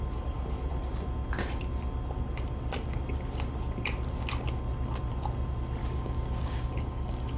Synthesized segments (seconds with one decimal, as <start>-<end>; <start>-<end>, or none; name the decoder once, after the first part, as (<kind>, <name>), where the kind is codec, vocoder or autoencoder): 5.8-7.4 (codec, DAC)